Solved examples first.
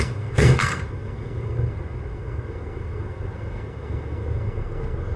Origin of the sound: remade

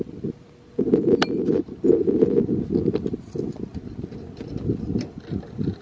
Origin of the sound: recorded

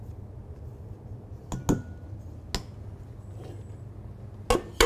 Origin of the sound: recorded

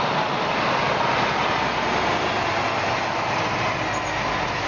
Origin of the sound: recorded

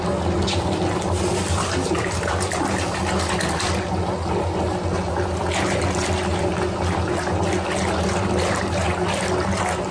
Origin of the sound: recorded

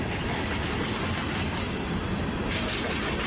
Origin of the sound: recorded